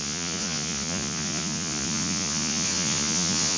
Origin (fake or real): fake